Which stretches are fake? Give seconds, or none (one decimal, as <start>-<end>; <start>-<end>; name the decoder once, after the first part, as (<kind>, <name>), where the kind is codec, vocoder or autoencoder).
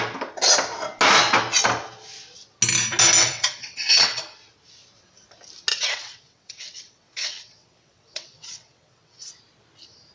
3.2-4.2 (vocoder, WaveNeXt); 5.7-9.3